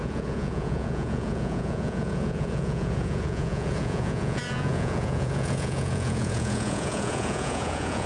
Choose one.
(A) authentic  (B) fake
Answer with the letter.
B